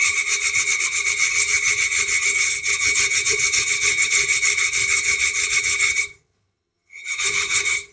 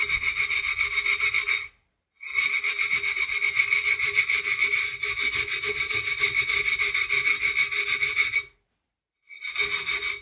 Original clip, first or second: second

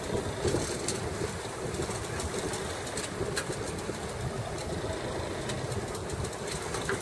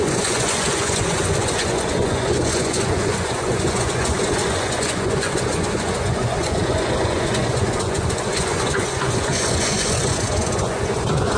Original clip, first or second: first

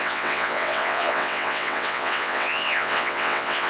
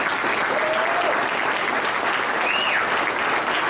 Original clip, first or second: second